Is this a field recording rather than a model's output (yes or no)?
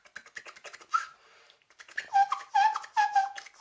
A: yes